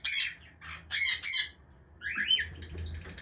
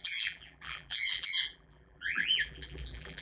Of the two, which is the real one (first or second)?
first